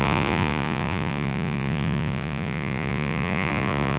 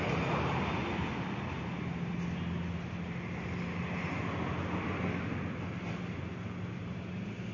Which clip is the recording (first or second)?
second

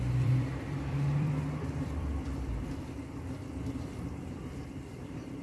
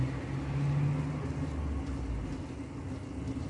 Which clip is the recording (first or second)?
second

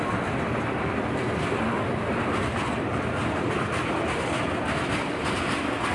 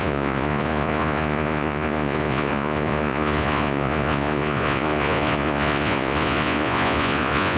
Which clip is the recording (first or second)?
first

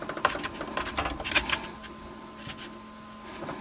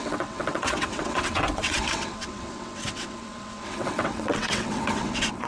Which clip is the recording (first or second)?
first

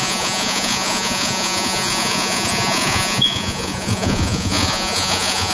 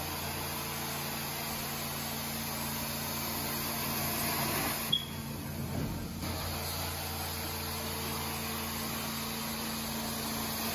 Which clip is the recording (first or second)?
second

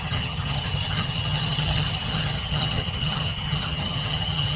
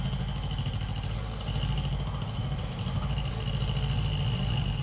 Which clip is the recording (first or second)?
second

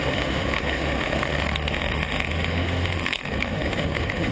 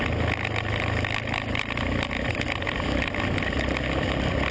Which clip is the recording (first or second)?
second